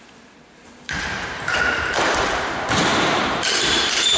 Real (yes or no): no